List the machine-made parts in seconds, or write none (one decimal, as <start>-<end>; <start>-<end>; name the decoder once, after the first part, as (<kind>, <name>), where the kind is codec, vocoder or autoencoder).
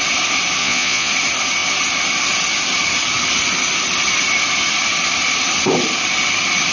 0.6-1.1 (vocoder, Vocos)